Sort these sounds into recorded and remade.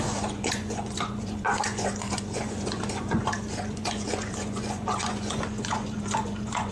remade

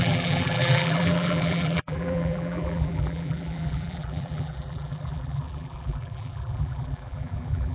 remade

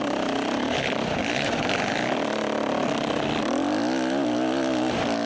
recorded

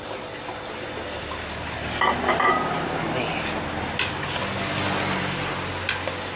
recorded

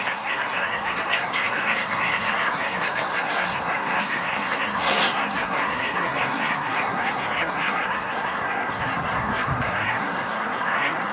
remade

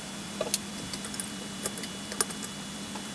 recorded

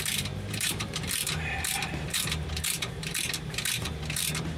remade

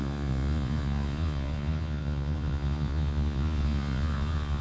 remade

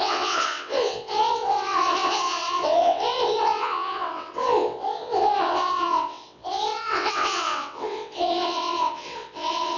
remade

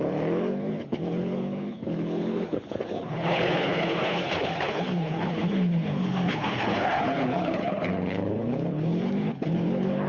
remade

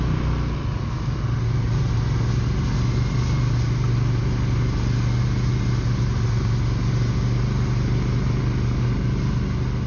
recorded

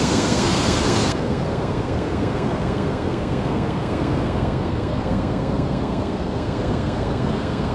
remade